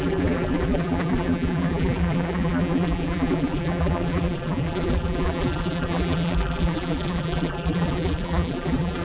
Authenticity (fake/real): fake